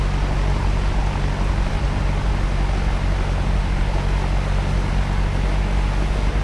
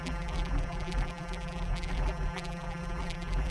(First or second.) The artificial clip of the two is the second